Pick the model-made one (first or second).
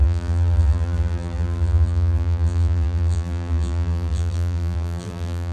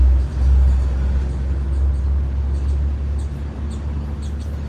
first